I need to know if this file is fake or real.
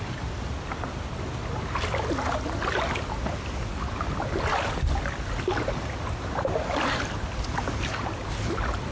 real